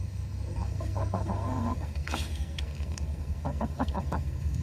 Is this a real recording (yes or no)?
no